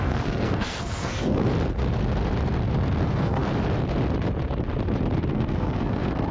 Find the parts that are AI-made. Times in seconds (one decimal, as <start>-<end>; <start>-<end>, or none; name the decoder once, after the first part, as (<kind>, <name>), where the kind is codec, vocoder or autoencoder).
0.0-1.5 (codec, SNAC); 3.0-3.4; 5.3-6.3